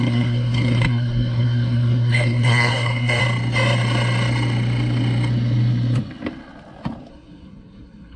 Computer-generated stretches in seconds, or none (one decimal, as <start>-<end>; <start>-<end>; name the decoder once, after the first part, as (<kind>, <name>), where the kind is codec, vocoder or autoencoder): 0.0-3.2 (codec, SNAC); 7.1-8.2